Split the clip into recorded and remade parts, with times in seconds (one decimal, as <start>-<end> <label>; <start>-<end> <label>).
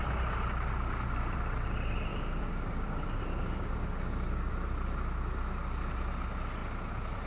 0.0-2.1 recorded; 2.1-4.5 remade; 4.5-7.3 recorded